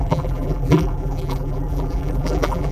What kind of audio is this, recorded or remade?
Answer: remade